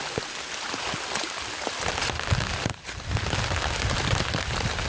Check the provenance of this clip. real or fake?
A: real